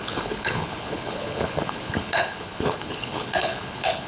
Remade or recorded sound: remade